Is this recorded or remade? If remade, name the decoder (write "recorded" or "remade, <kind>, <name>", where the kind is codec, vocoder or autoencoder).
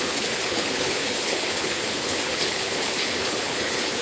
remade, codec, HILCodec